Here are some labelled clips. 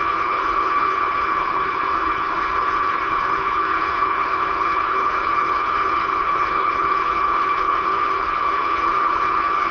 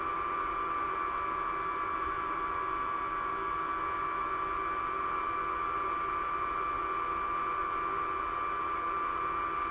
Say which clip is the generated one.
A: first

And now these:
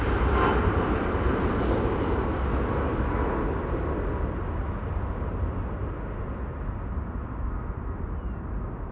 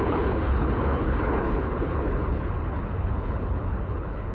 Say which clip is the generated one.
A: second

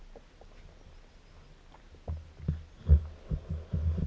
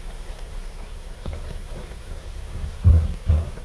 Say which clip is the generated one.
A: second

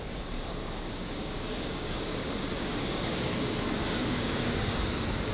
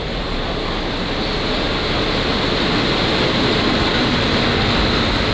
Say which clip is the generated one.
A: first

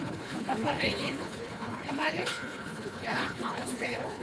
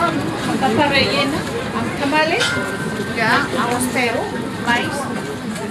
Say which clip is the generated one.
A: first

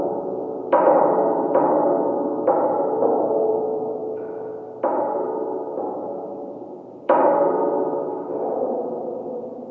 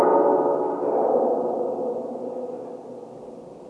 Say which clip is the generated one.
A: first